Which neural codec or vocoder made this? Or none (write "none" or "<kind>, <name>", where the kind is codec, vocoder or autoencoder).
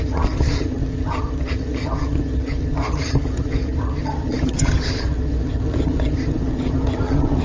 vocoder, HiFi-GAN